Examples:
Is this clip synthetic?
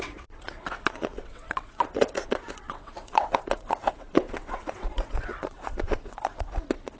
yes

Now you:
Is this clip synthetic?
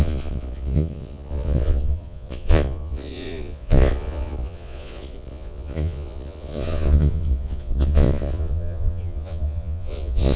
yes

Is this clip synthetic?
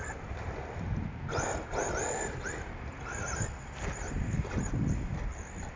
no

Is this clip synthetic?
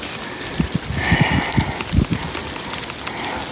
yes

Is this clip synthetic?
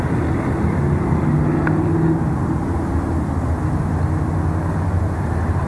no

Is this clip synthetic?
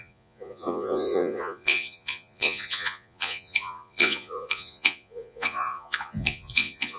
yes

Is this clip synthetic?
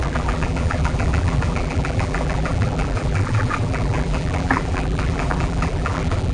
yes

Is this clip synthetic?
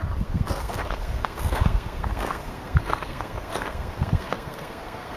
yes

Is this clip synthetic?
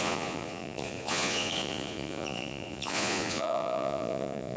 yes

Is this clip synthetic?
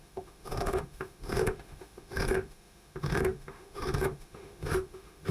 yes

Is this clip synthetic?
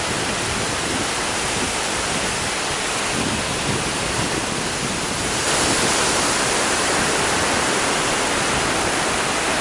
no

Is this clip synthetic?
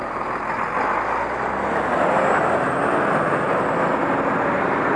no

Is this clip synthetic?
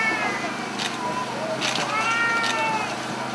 no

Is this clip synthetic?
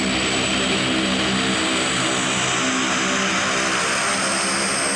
no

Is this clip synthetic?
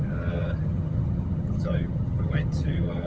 yes